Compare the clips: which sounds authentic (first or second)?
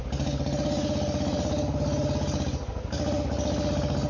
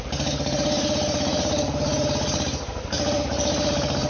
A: first